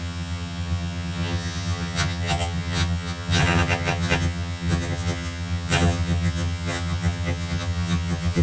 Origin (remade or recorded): remade